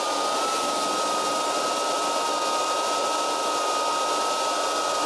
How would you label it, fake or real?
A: real